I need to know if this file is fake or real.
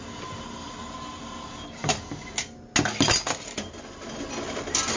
real